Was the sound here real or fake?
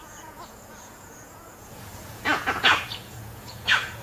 fake